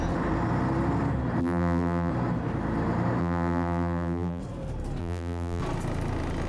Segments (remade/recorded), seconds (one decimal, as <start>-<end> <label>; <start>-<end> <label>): 0.0-1.4 recorded; 1.4-2.1 remade; 2.1-3.2 recorded; 3.2-4.4 remade; 4.4-5.0 recorded; 5.0-5.6 remade; 5.6-6.5 recorded